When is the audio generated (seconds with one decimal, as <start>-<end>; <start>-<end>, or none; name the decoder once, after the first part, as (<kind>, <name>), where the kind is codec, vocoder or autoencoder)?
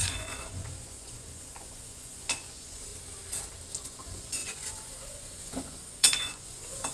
0.0-2.9 (vocoder, Vocos); 3.8-6.9